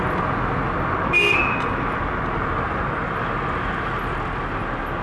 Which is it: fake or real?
real